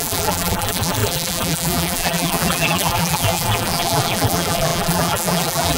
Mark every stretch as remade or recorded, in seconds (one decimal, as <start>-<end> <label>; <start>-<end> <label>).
0.0-5.8 remade